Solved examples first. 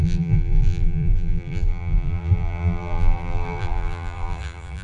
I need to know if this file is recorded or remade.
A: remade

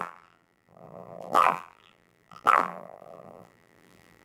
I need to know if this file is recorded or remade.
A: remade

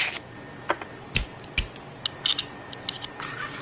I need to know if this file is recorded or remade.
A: recorded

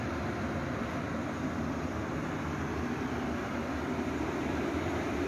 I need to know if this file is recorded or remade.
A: recorded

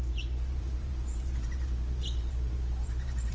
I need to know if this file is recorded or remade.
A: remade